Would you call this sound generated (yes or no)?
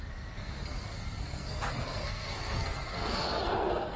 yes